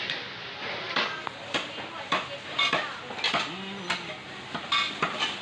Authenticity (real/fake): real